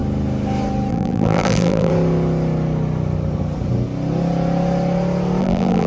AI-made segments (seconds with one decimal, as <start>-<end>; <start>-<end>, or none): 0.9-1.9; 5.4-5.9